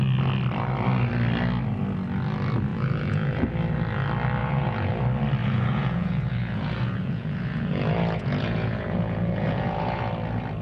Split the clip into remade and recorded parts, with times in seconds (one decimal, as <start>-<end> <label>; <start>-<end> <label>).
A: 0.0-2.7 recorded; 2.7-3.5 remade; 3.5-4.4 recorded; 4.4-5.0 remade; 5.0-5.4 recorded; 5.4-10.1 remade; 10.1-10.6 recorded

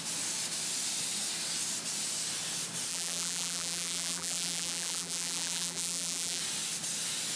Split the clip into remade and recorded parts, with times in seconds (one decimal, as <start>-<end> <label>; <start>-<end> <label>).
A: 0.0-2.9 recorded; 2.9-6.4 remade; 6.4-7.4 recorded

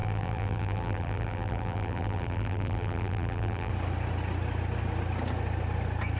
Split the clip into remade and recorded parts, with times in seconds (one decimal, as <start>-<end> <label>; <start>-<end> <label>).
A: 0.0-3.7 remade; 3.7-6.2 recorded

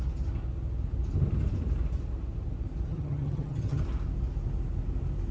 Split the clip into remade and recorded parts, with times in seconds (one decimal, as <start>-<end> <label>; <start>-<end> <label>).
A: 0.0-2.9 recorded; 2.9-3.8 remade; 3.8-5.3 recorded

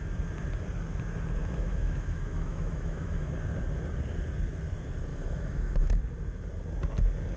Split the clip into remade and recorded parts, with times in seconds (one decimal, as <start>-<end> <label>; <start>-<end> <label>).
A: 0.0-1.4 recorded; 1.4-3.3 remade; 3.3-5.1 recorded; 5.1-6.0 remade; 6.0-7.4 recorded

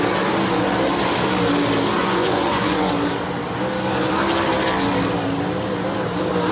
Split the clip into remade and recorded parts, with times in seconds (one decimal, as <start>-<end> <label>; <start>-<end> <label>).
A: 0.0-2.0 recorded; 2.0-2.9 remade; 2.9-6.5 recorded